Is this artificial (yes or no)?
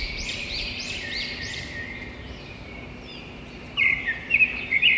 yes